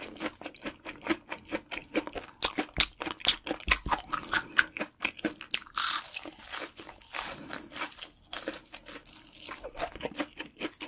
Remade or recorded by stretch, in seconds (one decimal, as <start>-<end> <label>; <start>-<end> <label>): 0.0-10.9 recorded